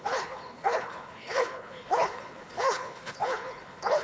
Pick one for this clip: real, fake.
fake